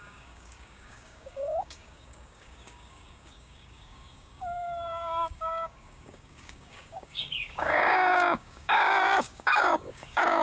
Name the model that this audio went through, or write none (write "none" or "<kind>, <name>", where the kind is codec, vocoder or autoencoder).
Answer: codec, DAC